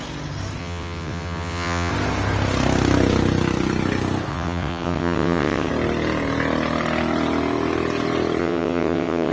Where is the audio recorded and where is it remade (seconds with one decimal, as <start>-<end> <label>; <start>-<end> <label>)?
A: 0.0-0.6 recorded; 0.6-1.9 remade; 1.9-4.3 recorded; 4.3-5.7 remade; 5.7-8.4 recorded; 8.4-9.3 remade